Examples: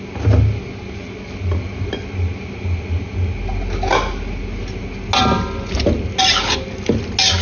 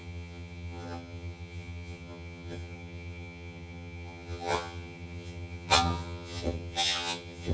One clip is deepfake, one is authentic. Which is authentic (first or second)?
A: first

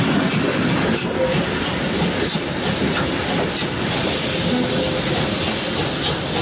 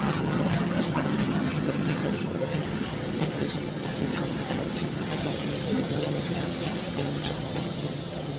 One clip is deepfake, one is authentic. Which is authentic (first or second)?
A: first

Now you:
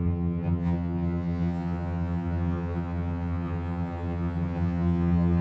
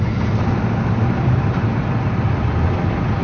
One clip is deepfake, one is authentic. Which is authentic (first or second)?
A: second